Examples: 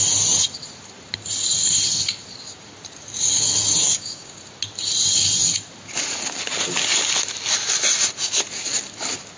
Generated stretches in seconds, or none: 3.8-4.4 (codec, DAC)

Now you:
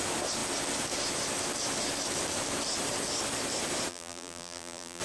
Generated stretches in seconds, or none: 3.9-5.0 (vocoder, BigVGAN v2)

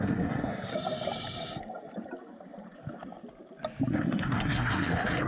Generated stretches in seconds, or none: 0.0-0.7 (codec, SNAC); 3.9-5.3